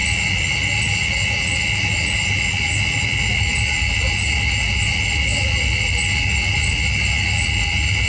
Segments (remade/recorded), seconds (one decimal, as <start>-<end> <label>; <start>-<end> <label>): 0.0-8.1 recorded